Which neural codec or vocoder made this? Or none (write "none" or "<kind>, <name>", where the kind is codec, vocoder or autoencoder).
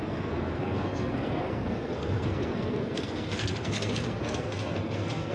codec, SNAC